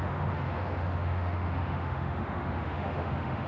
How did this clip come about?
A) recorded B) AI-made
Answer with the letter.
B